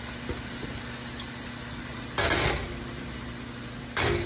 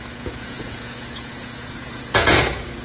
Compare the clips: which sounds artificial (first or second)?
second